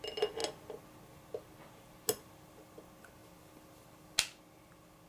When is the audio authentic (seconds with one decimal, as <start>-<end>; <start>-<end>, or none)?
0.0-5.1